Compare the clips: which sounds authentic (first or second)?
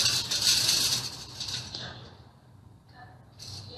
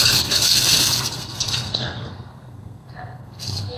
first